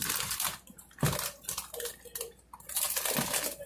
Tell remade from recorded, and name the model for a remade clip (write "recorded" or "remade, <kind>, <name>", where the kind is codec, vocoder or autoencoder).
recorded